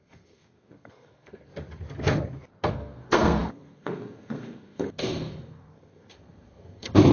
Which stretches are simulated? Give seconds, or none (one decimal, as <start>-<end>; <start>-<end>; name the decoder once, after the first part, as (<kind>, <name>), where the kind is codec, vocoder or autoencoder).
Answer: 0.0-1.5 (codec, SNAC); 2.7-7.1